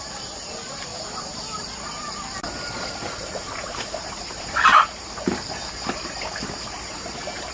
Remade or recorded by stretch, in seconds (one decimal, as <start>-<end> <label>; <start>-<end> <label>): 0.0-0.9 remade; 0.9-1.6 recorded; 1.6-7.5 remade